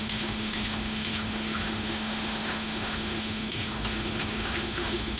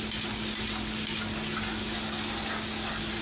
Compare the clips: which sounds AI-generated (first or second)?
first